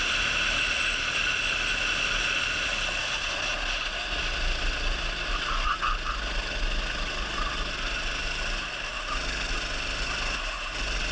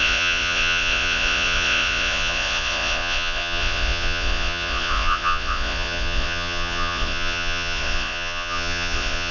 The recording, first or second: first